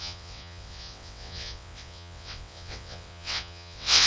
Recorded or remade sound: remade